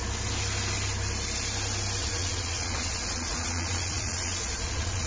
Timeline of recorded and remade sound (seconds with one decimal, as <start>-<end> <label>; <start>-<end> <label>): 0.0-2.0 recorded; 2.0-5.1 remade